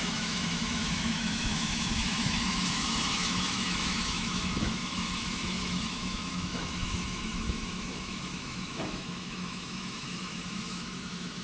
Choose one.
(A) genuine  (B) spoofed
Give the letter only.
B